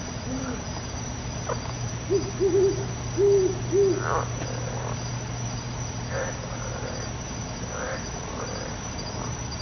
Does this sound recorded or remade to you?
recorded